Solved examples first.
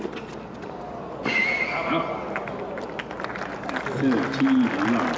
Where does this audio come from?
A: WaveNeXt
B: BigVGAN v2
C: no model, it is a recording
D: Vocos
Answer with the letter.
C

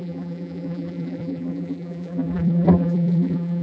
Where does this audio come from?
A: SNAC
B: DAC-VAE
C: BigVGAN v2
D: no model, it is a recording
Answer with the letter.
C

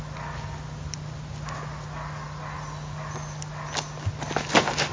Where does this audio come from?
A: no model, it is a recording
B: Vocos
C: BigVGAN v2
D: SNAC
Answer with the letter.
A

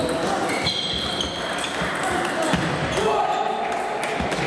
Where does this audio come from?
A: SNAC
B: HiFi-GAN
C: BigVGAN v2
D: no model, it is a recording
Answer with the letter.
D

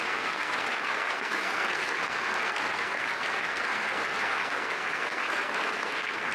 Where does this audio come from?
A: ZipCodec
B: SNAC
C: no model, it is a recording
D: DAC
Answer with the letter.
B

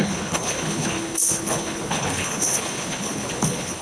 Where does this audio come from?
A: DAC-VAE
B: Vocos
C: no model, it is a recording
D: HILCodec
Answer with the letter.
D